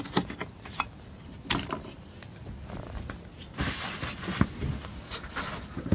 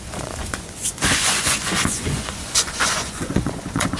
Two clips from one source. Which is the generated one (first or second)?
second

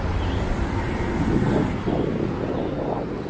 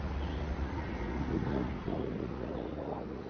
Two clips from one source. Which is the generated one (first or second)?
second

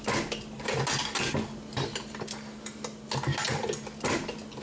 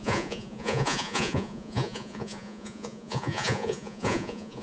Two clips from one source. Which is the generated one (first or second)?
second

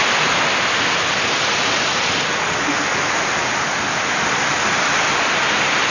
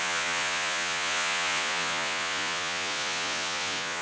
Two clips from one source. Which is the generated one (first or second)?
second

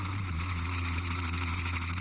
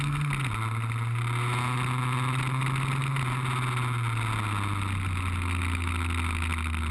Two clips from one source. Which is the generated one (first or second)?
first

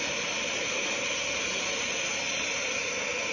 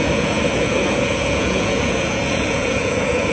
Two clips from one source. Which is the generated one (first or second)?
second